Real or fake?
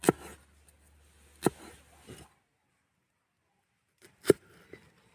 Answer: real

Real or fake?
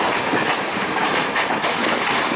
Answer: fake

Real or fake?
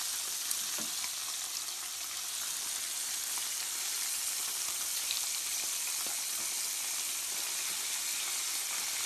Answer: real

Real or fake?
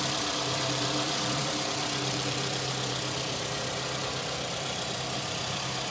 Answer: fake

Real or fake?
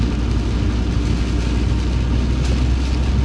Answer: real